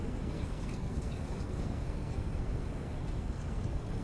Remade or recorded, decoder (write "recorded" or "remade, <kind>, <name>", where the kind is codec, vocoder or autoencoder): remade, codec, SNAC